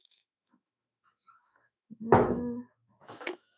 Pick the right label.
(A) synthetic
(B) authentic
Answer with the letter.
A